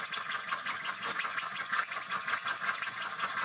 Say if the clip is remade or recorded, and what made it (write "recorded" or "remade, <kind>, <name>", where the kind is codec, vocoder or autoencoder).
remade, vocoder, Vocos